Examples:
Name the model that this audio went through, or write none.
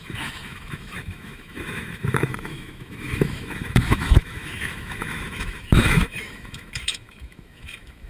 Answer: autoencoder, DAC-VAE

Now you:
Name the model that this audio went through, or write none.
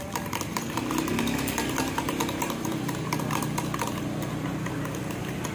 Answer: none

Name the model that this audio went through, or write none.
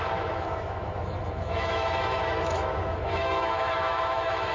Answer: autoencoder, DAC-VAE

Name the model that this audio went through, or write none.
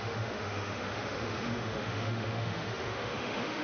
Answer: autoencoder, DAC-VAE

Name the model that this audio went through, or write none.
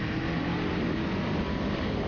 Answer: none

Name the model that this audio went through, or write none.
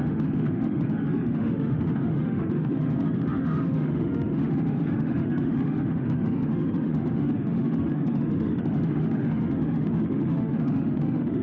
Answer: autoencoder, DAC-VAE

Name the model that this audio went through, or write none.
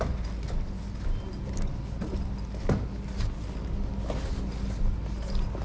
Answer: none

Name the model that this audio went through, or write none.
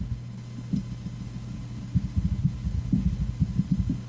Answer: none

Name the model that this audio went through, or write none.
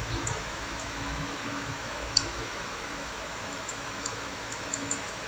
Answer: autoencoder, DAC-VAE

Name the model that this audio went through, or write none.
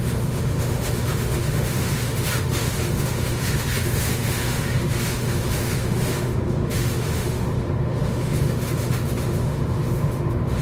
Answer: autoencoder, DAC-VAE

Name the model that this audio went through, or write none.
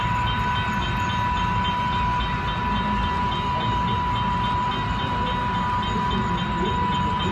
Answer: none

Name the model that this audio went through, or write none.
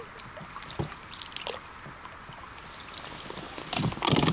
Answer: none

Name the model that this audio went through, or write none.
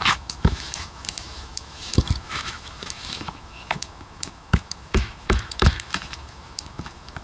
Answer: autoencoder, DAC-VAE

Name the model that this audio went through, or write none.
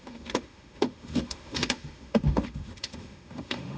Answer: autoencoder, DAC-VAE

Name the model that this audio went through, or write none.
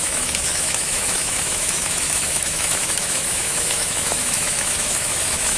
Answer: autoencoder, DAC-VAE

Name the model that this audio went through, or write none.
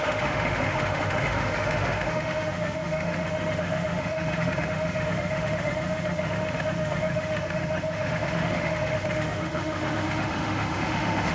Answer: autoencoder, DAC-VAE